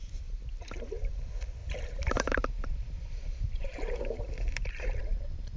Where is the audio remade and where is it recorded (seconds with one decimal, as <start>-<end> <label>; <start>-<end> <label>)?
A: 0.0-0.8 remade; 0.8-1.6 recorded; 1.6-5.0 remade; 5.0-5.6 recorded